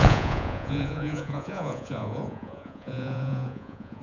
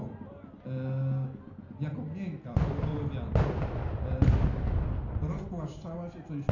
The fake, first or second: first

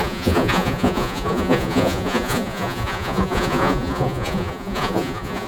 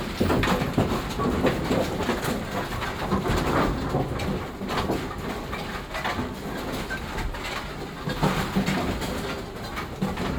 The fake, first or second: first